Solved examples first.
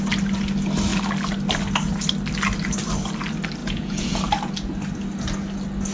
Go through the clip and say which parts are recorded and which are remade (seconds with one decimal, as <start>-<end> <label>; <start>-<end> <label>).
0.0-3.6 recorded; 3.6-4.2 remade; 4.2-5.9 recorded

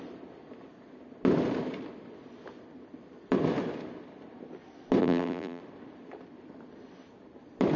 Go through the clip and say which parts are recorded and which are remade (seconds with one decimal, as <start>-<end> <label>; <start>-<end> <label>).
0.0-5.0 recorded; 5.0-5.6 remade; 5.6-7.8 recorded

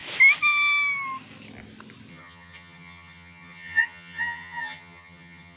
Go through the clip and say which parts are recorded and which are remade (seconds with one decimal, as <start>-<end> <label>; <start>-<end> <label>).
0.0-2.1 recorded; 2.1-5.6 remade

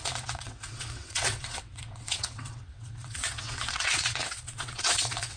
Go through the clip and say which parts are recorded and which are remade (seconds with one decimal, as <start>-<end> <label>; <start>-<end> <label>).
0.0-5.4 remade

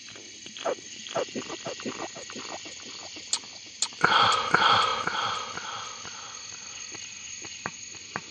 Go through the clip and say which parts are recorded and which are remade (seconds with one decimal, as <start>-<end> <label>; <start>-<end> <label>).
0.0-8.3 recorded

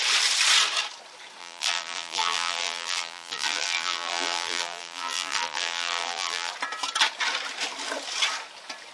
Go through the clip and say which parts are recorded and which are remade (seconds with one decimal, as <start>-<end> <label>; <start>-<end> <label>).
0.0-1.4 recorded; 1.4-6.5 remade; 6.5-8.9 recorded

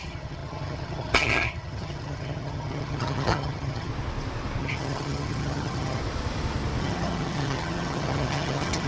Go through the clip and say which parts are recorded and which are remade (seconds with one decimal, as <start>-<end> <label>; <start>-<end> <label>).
0.0-3.9 remade; 3.9-4.6 recorded; 4.6-6.0 remade; 6.0-6.8 recorded; 6.8-8.9 remade